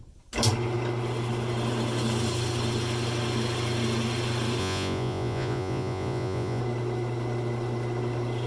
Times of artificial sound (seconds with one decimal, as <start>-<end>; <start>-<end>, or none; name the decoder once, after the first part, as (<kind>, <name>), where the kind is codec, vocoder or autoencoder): 4.6-6.6 (vocoder, Vocos)